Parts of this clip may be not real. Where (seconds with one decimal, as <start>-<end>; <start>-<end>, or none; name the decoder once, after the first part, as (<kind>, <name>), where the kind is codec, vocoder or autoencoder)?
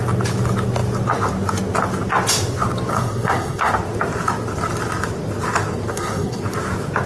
2.9-3.7 (codec, SNAC); 5.9-6.4